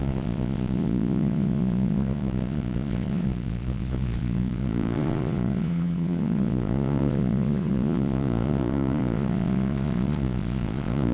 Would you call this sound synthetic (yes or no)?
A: yes